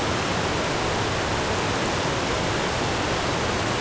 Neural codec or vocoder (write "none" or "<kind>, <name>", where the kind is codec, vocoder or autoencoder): none